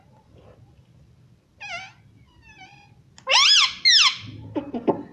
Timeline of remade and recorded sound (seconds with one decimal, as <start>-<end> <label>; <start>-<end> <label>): 0.0-5.1 recorded